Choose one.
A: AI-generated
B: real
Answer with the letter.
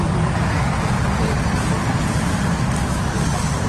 B